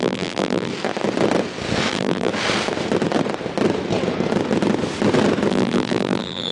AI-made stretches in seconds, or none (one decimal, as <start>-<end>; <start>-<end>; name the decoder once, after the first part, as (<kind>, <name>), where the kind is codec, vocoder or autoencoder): 0.0-0.7 (vocoder, BigVGAN v2); 1.9-2.3; 5.5-6.5